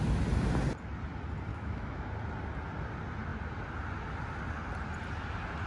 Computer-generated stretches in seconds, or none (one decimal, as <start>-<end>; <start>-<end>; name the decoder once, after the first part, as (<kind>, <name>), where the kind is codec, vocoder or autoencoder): 1.5-2.1 (autoencoder, DAC-VAE)